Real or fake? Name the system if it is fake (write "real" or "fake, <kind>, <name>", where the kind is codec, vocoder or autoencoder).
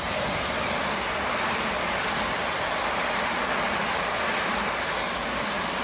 real